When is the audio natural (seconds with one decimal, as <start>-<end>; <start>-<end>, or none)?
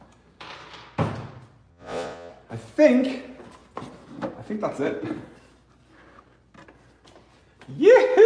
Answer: 0.0-1.7; 2.3-8.3